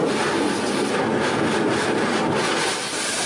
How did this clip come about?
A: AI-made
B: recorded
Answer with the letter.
B